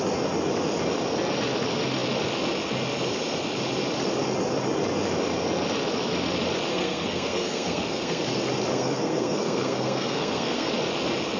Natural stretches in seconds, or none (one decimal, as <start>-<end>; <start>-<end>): 0.0-6.7; 8.2-8.7; 10.7-11.4